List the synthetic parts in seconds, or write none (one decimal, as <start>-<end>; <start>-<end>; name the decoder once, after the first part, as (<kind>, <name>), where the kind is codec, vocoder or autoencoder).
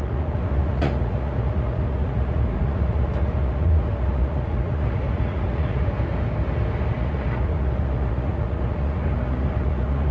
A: 0.0-5.8 (vocoder, Vocos); 6.9-10.1